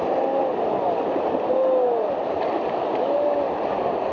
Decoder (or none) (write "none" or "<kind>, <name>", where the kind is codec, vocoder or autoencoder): none